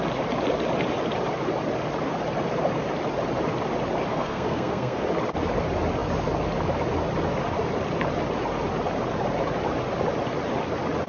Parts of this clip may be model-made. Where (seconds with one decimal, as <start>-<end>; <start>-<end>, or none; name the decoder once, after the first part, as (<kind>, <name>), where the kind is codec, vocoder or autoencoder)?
4.1-5.0 (codec, SNAC)